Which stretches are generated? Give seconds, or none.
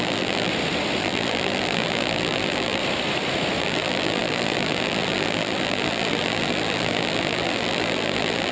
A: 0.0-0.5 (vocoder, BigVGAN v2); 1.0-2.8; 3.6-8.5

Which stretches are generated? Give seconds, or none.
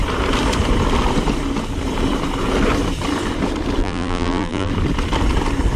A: 3.8-4.7 (vocoder, BigVGAN v2)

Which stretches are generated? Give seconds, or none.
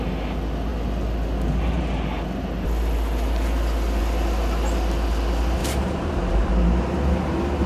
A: 5.6-6.5 (vocoder, BigVGAN v2)